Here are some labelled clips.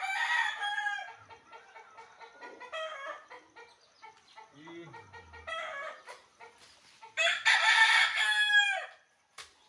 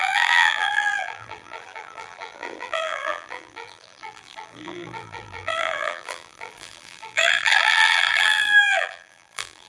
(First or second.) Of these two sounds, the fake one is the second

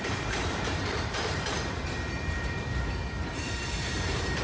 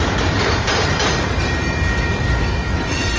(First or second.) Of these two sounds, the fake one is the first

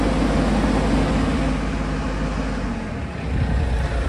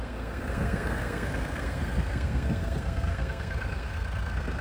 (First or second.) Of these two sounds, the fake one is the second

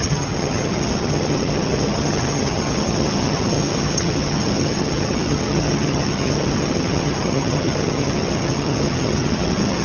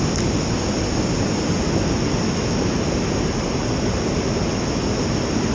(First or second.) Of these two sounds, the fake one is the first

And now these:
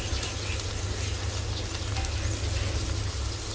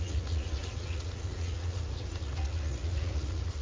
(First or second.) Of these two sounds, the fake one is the second